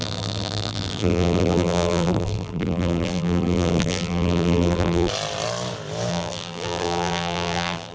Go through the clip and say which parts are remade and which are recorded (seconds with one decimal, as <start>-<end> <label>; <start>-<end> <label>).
0.0-5.1 remade; 5.1-6.1 recorded; 6.1-7.9 remade